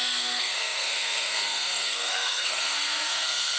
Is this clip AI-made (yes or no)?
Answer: yes